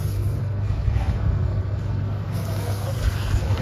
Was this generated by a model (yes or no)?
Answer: yes